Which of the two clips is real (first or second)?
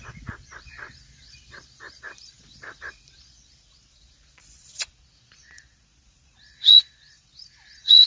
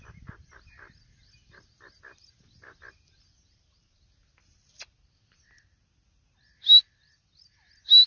second